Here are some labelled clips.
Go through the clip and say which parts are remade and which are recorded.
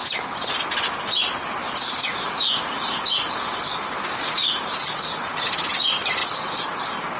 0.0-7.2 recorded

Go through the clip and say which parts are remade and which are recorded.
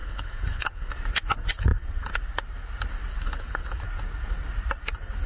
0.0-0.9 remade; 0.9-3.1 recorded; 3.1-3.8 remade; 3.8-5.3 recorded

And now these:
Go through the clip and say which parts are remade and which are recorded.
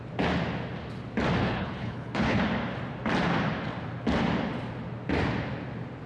0.0-1.4 recorded; 1.4-2.4 remade; 2.4-6.1 recorded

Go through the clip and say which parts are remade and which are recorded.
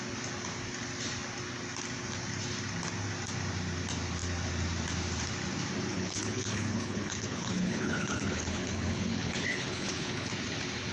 0.0-5.9 recorded; 5.9-10.3 remade; 10.3-10.9 recorded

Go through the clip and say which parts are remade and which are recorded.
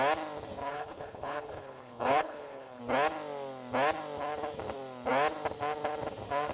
0.0-0.7 recorded; 0.7-2.8 remade; 2.8-6.5 recorded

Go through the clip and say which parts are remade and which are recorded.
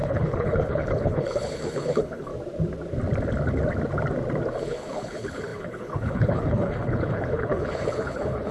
0.0-2.3 remade; 2.3-4.6 recorded; 4.6-8.5 remade